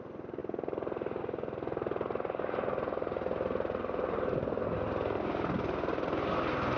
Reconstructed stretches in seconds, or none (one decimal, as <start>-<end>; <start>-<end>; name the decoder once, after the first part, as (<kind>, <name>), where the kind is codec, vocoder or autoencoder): none